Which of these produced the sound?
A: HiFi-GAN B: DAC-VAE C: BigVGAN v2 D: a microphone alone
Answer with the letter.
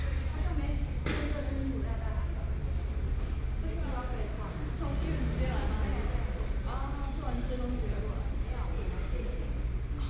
D